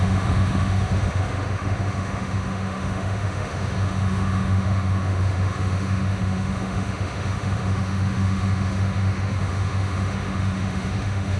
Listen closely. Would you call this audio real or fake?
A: fake